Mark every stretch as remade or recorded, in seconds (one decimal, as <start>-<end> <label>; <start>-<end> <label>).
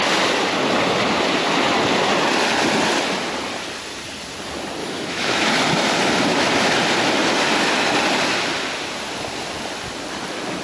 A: 0.0-4.8 recorded; 4.8-5.5 remade; 5.5-10.6 recorded